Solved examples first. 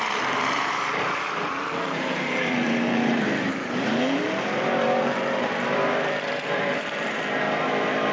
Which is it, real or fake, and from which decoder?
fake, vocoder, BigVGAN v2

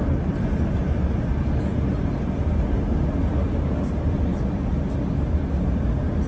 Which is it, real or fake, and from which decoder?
real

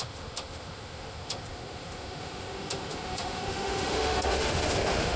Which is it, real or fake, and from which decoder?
fake, autoencoder, DAC-VAE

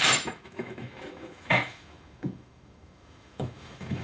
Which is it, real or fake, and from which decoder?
fake, autoencoder, DAC-VAE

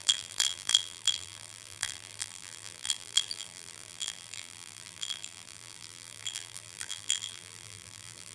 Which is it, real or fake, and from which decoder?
fake, vocoder, BigVGAN v2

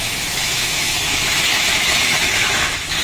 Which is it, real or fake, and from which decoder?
fake, autoencoder, DAC-VAE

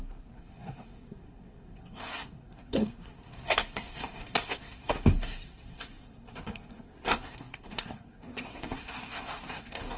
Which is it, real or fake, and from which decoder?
fake, codec, SNAC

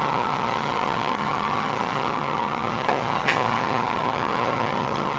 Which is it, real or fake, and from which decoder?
fake, vocoder, HiFi-GAN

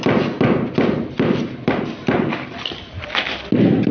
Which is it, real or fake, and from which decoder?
real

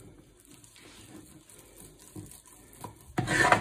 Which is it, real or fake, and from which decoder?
real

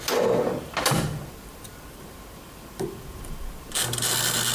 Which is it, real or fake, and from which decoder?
real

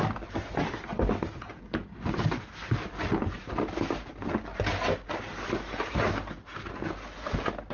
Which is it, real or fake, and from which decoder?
real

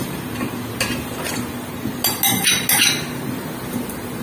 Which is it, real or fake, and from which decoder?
real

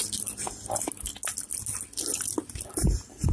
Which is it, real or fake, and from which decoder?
real